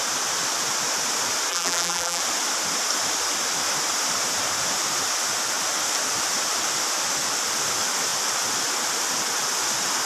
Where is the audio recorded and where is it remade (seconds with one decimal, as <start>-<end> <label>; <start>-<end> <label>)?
0.0-1.5 recorded; 1.5-2.2 remade; 2.2-10.1 recorded